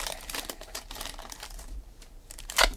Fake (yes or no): yes